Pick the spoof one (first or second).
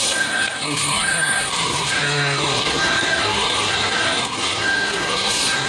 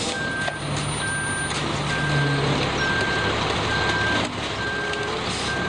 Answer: first